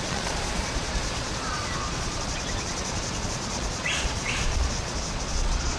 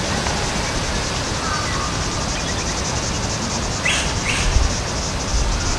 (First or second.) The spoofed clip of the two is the first